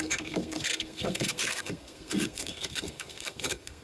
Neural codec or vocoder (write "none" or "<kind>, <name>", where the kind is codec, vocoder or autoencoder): codec, SNAC